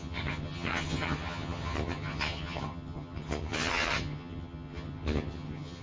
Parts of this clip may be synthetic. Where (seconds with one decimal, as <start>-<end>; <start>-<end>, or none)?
0.0-5.8